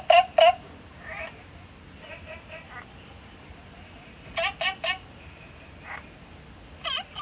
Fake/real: real